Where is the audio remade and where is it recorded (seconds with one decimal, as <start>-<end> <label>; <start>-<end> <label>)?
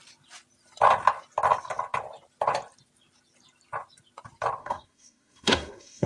0.0-4.6 recorded; 4.6-6.1 remade